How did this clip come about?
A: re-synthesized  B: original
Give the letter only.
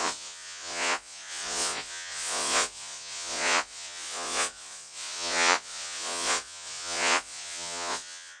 A